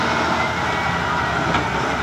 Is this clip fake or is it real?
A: real